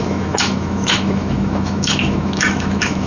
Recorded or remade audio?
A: remade